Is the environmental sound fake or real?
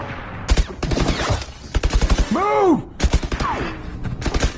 real